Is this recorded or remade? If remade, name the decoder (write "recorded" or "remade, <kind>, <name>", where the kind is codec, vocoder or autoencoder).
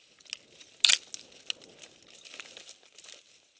recorded